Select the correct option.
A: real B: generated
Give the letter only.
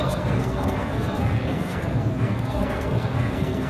B